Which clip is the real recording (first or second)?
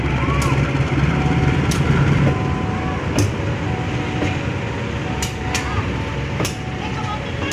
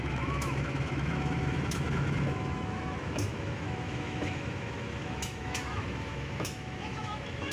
first